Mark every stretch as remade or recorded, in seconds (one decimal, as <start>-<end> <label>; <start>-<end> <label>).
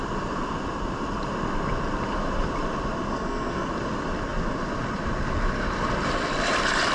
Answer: 0.0-3.1 recorded; 3.1-3.7 remade; 3.7-6.9 recorded